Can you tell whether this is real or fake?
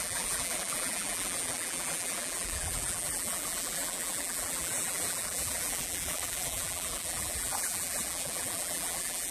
fake